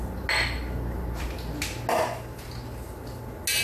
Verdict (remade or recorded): recorded